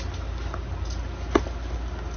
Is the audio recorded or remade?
recorded